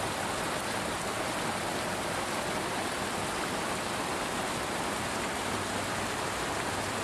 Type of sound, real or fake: real